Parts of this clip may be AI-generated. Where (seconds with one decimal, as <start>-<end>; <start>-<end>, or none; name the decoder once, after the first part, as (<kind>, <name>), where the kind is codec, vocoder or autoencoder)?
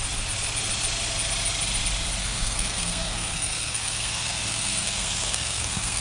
2.2-6.0 (codec, SNAC)